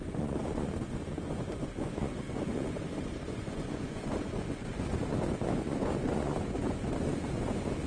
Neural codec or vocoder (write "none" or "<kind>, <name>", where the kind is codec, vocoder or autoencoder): vocoder, Vocos